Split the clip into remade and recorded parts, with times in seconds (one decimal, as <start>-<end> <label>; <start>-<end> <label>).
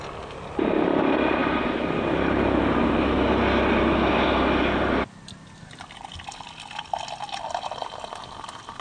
0.0-8.8 recorded